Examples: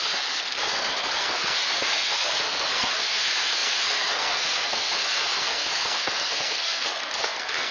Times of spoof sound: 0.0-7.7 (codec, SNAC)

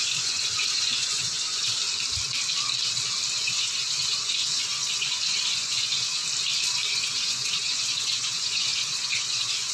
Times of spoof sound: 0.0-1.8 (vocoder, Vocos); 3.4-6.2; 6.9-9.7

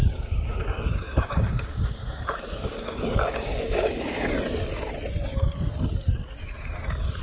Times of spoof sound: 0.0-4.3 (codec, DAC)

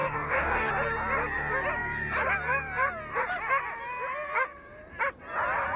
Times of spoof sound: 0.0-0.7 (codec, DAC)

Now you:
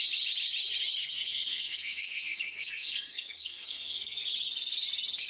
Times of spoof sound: 1.0-4.2 (codec, SNAC)